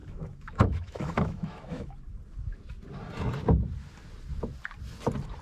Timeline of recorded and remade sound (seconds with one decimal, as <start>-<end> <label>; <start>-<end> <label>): 0.0-1.9 remade; 1.9-5.4 recorded

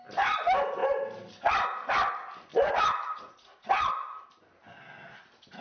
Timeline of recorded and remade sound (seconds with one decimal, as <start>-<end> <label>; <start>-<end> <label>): 0.0-2.5 recorded; 2.5-3.7 remade; 3.7-5.6 recorded

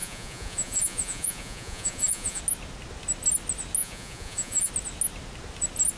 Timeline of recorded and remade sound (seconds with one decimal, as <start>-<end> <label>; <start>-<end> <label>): 0.0-2.4 remade; 2.4-3.8 recorded; 3.8-4.7 remade; 4.7-6.0 recorded

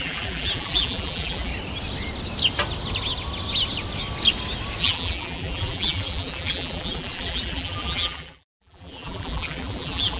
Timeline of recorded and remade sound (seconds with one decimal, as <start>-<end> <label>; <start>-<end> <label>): 0.0-1.5 remade; 1.5-4.8 recorded; 4.8-10.2 remade

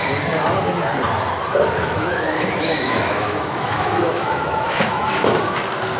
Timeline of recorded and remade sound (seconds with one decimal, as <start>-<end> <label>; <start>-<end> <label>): 0.0-1.8 recorded; 1.8-5.4 remade; 5.4-6.0 recorded

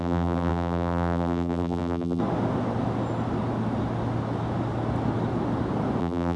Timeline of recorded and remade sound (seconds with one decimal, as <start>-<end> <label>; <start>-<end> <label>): 0.0-2.2 remade; 2.2-6.0 recorded; 6.0-6.4 remade